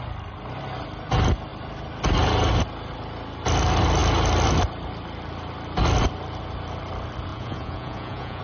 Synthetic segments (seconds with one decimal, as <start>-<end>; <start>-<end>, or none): 7.3-8.4